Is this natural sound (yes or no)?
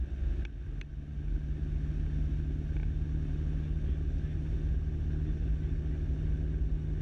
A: yes